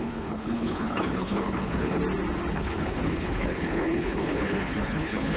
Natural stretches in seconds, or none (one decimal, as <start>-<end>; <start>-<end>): 2.0-2.5